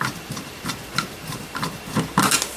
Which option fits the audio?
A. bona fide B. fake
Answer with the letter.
A